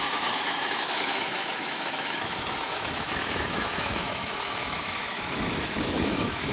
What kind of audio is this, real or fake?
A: fake